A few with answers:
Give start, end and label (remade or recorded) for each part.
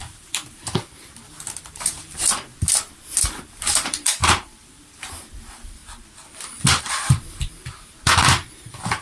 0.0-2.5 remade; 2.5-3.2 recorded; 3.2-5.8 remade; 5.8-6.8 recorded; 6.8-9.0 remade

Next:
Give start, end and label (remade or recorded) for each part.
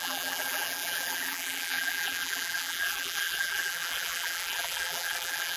0.0-5.6 remade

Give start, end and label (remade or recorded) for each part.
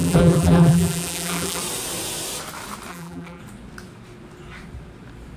0.0-1.6 remade; 1.6-2.9 recorded; 2.9-3.4 remade; 3.4-5.4 recorded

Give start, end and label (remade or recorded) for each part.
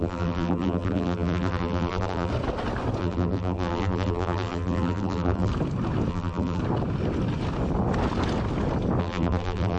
0.0-2.3 remade; 2.3-3.0 recorded; 3.0-5.5 remade; 5.5-6.1 recorded; 6.1-6.6 remade; 6.6-9.0 recorded; 9.0-9.8 remade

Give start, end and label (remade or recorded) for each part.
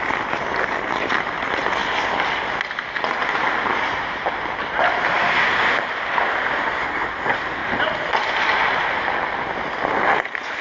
0.0-10.6 recorded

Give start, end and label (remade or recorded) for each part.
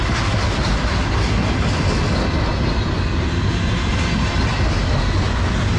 0.0-5.8 recorded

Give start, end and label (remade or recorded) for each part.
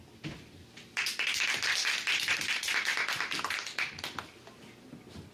0.0-5.3 recorded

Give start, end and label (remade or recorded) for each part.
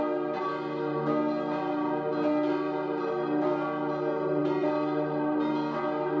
0.0-6.2 recorded